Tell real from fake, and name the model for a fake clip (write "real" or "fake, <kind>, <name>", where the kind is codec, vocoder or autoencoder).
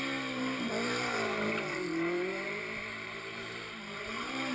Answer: fake, vocoder, BigVGAN v2